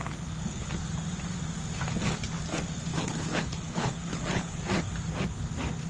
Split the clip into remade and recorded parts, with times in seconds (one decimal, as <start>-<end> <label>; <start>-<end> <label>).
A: 0.0-0.7 remade; 0.7-2.9 recorded; 2.9-4.6 remade; 4.6-5.9 recorded